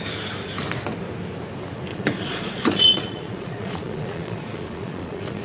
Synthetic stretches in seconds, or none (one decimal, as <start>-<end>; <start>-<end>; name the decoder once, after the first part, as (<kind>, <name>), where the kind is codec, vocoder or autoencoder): 1.9-5.4 (vocoder, Vocos)